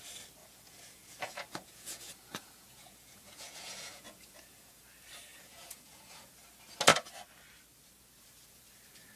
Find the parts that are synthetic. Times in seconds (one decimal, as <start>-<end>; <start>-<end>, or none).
0.4-4.8; 5.3-6.3